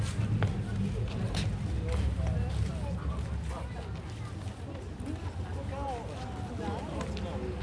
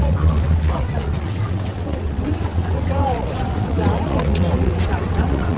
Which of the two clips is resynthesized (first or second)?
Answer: second